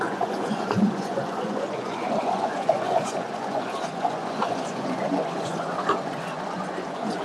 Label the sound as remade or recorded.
remade